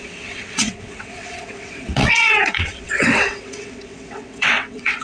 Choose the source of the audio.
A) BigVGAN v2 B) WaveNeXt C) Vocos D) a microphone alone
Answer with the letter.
B